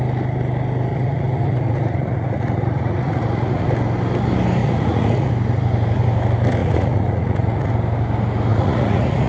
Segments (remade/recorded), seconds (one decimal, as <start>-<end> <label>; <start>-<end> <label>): 0.0-0.9 recorded; 0.9-3.7 remade; 3.7-4.6 recorded; 4.6-5.3 remade; 5.3-6.6 recorded; 6.6-7.7 remade; 7.7-8.5 recorded; 8.5-9.3 remade